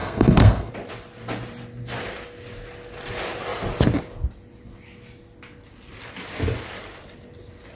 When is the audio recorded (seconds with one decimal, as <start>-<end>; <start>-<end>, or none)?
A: 0.7-7.8